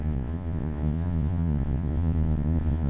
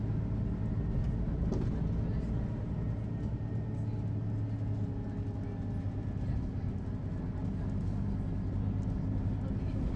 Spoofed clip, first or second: first